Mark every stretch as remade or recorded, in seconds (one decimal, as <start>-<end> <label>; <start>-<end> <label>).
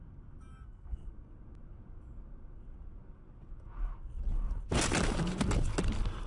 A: 0.0-0.5 recorded; 0.5-1.1 remade; 1.1-6.3 recorded